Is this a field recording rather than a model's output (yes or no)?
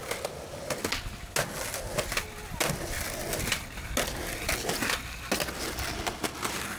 yes